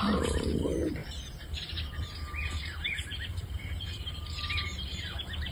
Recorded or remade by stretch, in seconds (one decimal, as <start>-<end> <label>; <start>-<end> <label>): 0.0-5.5 remade